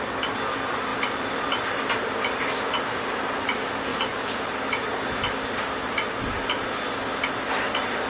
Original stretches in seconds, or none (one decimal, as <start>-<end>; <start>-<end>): 0.0-8.1